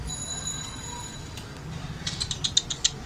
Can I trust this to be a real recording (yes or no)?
yes